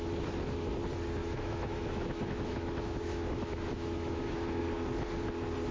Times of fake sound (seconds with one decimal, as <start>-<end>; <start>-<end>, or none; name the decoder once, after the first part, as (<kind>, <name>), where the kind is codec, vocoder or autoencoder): 1.2-4.6 (autoencoder, DAC-VAE)